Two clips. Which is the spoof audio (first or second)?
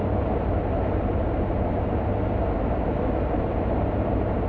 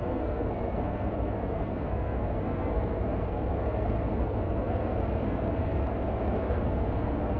second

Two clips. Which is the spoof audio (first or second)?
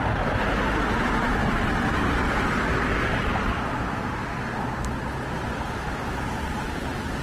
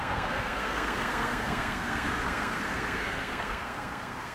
second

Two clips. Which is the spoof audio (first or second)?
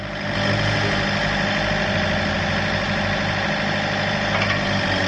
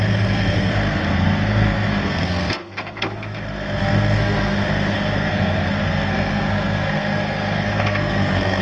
second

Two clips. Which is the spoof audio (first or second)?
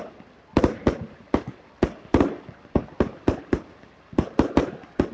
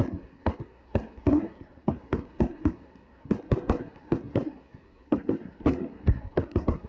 second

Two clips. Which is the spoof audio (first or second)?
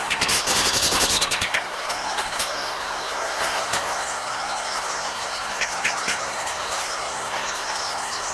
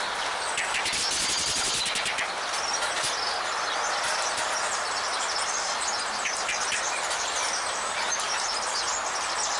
first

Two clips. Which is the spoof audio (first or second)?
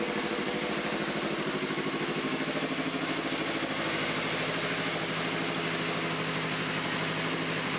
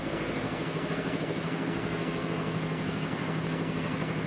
second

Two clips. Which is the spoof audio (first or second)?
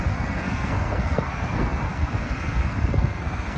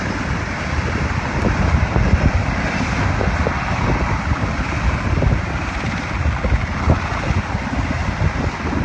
first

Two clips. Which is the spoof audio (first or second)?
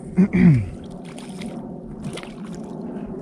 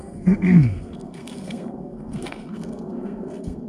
second